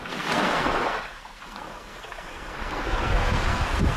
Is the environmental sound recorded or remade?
remade